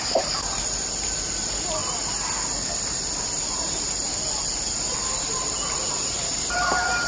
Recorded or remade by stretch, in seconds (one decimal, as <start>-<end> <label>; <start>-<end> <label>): 0.0-1.8 remade; 1.8-5.2 recorded; 5.2-7.1 remade